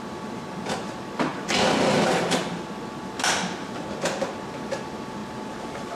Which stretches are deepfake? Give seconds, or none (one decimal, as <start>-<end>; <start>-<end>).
none